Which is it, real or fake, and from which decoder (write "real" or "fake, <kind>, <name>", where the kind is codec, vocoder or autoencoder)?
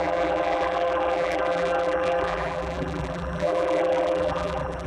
fake, vocoder, BigVGAN v2